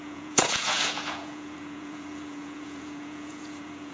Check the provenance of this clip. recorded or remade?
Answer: remade